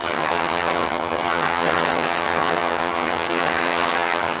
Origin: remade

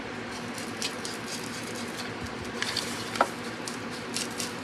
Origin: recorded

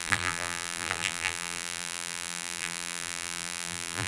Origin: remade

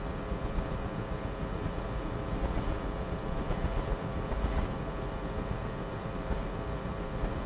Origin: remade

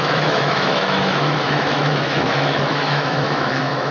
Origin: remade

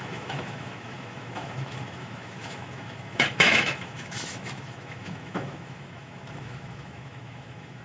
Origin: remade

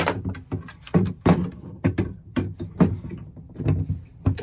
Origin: recorded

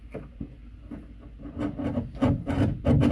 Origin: recorded